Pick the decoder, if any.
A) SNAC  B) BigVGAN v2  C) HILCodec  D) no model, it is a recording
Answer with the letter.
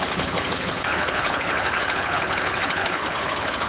C